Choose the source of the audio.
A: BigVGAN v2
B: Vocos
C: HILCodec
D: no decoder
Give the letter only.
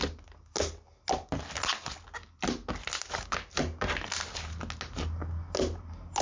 D